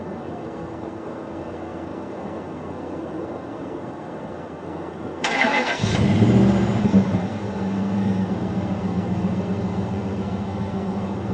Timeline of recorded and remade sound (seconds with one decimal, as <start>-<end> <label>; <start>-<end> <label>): 0.0-5.9 remade; 5.9-6.8 recorded; 6.8-11.3 remade